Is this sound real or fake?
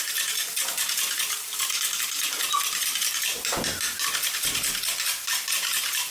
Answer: real